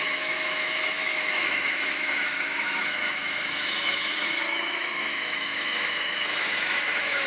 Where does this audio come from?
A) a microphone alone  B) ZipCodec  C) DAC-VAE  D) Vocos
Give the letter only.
C